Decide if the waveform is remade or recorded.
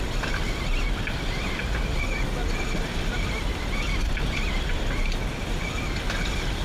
recorded